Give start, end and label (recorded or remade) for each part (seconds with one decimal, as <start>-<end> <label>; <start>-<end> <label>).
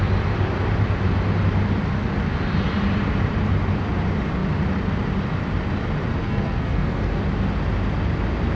0.0-6.2 recorded; 6.2-7.2 remade; 7.2-8.5 recorded